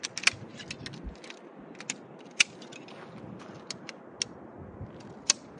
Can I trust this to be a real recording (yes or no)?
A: yes